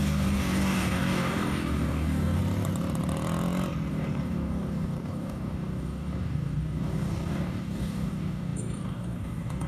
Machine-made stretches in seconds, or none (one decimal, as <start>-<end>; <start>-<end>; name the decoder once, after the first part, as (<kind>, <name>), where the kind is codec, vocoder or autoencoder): 0.0-2.4 (codec, DAC); 3.9-9.7